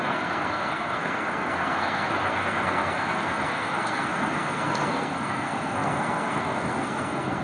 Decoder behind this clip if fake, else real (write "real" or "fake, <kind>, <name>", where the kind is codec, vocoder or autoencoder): fake, codec, SNAC